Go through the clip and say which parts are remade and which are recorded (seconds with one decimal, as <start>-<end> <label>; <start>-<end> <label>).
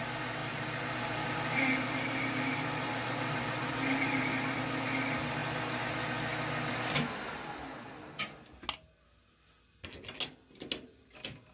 0.0-0.4 recorded; 0.4-4.6 remade; 4.6-11.5 recorded